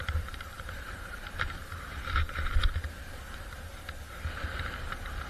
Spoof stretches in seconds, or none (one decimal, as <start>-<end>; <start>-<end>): 0.0-1.6; 4.8-5.3